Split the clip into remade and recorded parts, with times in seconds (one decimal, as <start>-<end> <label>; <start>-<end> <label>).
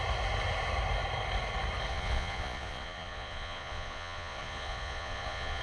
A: 0.0-1.9 recorded; 1.9-5.6 remade